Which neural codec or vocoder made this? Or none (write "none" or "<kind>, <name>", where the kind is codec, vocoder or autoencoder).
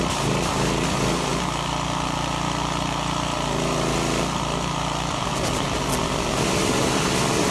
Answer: none